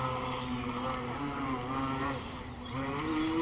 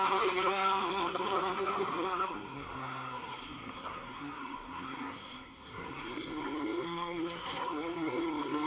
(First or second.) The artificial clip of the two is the second